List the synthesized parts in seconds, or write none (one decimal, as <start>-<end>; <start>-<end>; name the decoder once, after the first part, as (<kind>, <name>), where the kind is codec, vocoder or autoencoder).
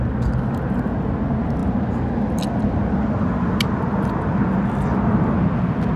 none